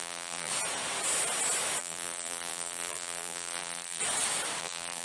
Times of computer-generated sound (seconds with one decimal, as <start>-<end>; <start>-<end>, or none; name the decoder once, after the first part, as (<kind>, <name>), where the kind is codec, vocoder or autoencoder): 0.0-0.5 (vocoder, BigVGAN v2); 1.8-4.0; 4.6-5.0